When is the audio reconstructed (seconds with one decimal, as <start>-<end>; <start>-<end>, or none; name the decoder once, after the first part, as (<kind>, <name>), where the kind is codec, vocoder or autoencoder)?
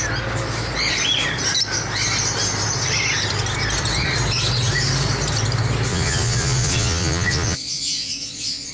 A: 5.9-8.7 (vocoder, Vocos)